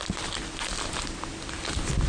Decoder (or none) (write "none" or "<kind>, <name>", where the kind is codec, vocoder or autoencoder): none